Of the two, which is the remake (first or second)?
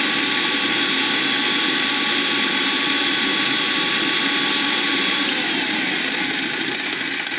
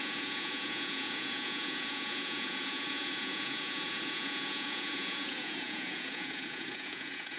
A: second